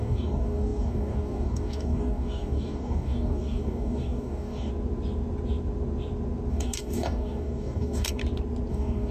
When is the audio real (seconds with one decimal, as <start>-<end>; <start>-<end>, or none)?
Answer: 4.7-6.5; 8.2-8.7